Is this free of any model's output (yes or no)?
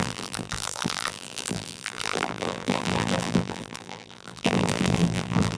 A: no